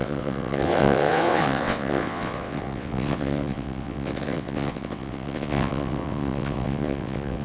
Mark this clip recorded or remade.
remade